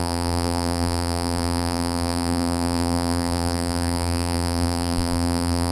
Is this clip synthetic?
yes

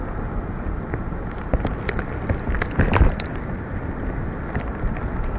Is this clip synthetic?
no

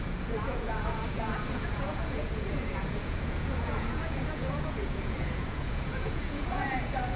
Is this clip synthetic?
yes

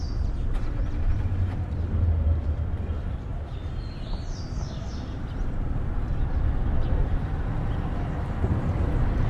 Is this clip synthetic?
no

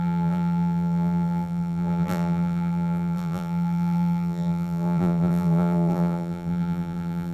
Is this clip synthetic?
yes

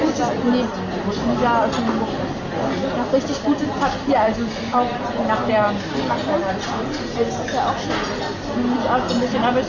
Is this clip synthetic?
no